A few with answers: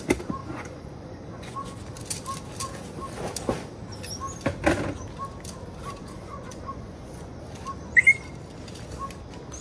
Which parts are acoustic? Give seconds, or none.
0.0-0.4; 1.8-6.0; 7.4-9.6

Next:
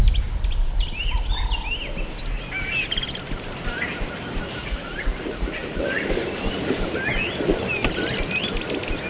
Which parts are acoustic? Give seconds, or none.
0.0-4.6; 5.8-9.1

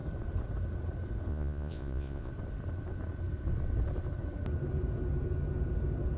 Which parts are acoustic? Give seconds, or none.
0.0-1.3; 2.3-6.2

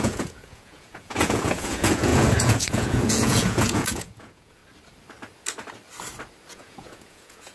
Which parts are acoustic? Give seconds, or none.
4.6-6.5

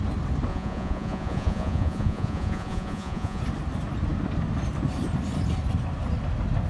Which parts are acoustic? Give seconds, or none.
0.0-0.5; 3.4-6.7

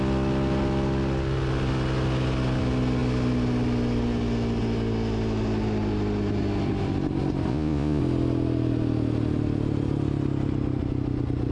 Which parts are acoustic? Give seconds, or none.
0.0-7.5; 8.0-11.5

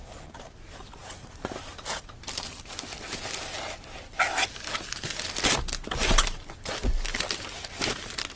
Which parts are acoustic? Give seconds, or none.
0.0-8.4

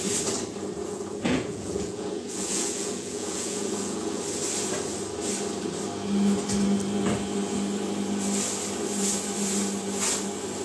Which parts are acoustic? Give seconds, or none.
0.0-0.8; 4.2-10.6